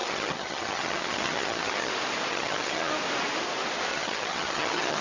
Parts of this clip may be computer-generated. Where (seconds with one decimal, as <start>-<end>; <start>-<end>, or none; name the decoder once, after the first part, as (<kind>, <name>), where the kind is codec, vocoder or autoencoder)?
0.0-1.9 (vocoder, HiFi-GAN); 2.3-2.9; 3.9-5.0